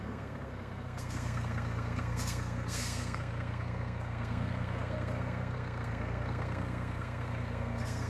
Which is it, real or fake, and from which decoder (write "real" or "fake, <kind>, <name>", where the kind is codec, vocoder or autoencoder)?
fake, codec, SNAC